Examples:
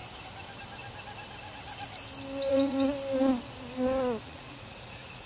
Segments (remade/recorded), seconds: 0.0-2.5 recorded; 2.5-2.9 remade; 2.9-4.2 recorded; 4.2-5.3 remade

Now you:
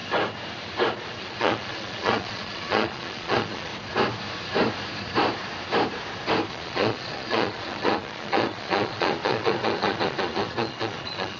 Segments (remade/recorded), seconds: 0.0-1.2 recorded; 1.2-3.7 remade; 3.7-6.5 recorded; 6.5-11.4 remade

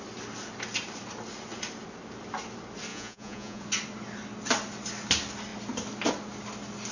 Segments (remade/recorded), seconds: 0.0-2.9 recorded; 2.9-3.6 remade; 3.6-6.9 recorded

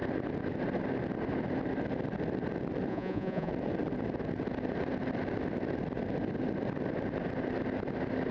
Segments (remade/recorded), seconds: 0.0-2.9 recorded; 2.9-3.5 remade; 3.5-8.3 recorded

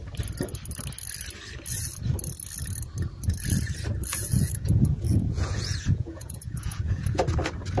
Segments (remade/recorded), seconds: 0.0-4.1 recorded; 4.1-7.2 remade; 7.2-7.8 recorded

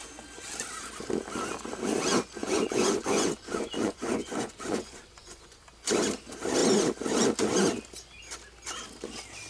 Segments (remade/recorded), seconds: 0.0-2.4 recorded; 2.4-5.6 remade; 5.6-9.5 recorded